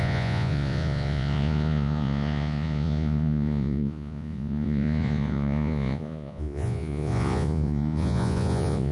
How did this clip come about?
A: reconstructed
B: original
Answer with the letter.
A